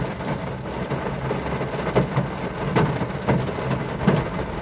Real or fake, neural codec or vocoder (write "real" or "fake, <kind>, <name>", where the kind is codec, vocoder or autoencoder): real